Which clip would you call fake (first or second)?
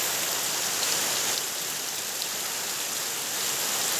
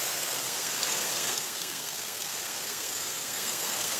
second